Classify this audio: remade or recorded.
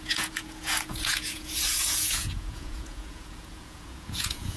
remade